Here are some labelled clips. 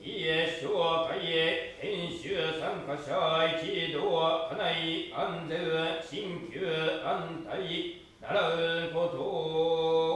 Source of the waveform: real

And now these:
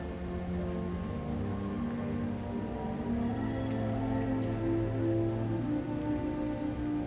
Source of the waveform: real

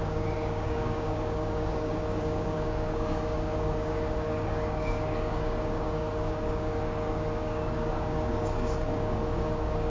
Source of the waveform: fake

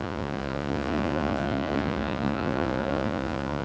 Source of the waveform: fake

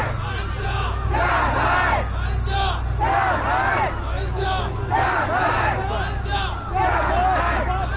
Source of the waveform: real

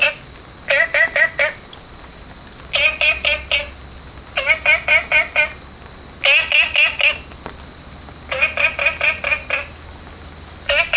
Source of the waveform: real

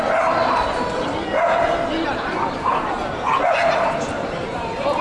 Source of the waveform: real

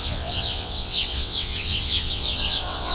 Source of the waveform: fake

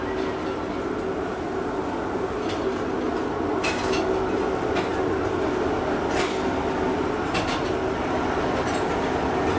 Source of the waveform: real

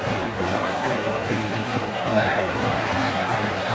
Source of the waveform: fake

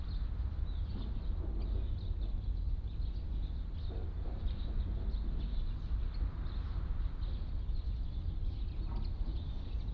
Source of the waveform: real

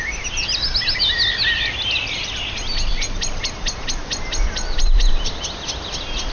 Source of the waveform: real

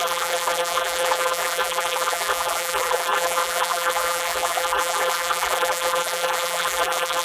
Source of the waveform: fake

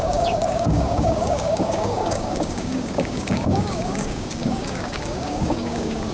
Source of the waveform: fake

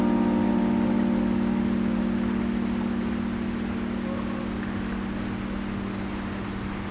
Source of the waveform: real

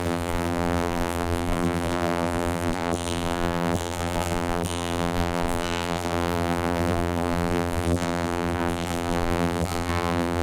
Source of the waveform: fake